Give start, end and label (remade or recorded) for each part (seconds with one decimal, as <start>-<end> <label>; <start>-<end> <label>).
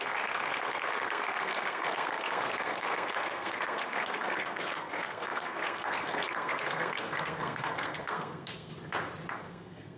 0.0-8.7 remade; 8.7-9.3 recorded; 9.3-10.0 remade